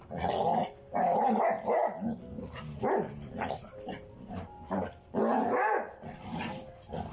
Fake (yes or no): no